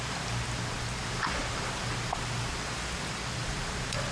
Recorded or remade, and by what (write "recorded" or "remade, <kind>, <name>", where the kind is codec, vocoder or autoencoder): remade, vocoder, BigVGAN v2